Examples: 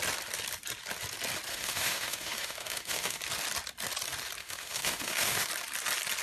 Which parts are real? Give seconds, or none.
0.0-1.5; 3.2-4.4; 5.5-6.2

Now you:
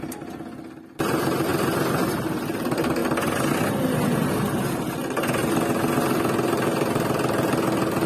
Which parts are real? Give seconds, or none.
0.0-8.1

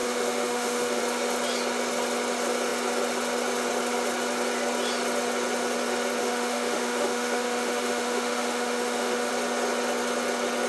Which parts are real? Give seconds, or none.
1.0-6.2; 9.3-10.7

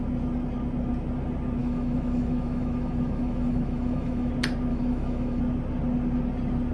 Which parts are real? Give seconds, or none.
0.0-1.6; 4.3-4.7; 5.4-6.7

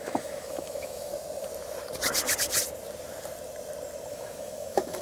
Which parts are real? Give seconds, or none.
1.1-4.1